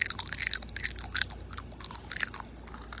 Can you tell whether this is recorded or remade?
recorded